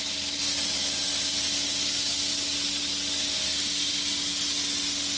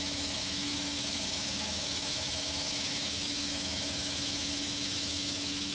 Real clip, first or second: first